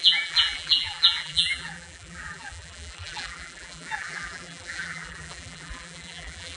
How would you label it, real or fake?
fake